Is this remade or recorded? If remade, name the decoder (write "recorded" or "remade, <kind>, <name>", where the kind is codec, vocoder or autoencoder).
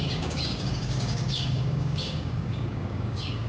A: remade, codec, DAC